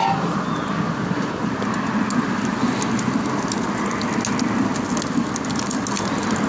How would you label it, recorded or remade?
recorded